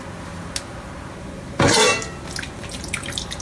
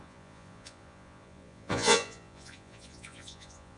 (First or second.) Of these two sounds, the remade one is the second